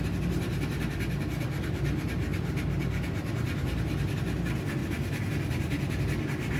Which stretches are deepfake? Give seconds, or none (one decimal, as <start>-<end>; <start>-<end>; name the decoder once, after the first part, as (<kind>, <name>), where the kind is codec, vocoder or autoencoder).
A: none